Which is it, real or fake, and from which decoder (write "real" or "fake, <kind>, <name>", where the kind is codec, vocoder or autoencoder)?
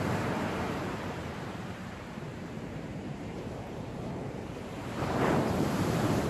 fake, vocoder, BigVGAN v2